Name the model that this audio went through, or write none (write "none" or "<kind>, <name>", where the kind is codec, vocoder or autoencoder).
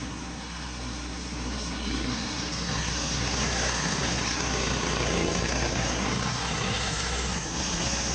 codec, SNAC